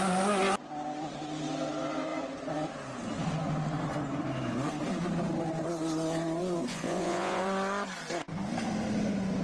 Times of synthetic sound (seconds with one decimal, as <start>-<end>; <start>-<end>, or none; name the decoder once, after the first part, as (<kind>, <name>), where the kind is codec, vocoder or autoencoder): 6.7-7.4 (vocoder, Vocos)